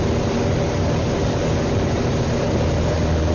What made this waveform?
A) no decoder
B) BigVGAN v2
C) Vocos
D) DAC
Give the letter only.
A